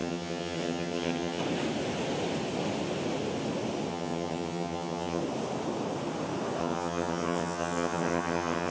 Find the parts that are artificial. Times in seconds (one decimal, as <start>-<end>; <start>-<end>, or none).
0.0-1.4; 3.9-5.2; 6.6-8.7